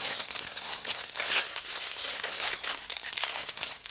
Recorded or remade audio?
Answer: remade